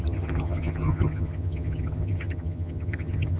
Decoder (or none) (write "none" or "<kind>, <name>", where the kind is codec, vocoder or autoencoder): vocoder, HiFi-GAN